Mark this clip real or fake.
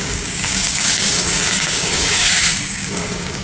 fake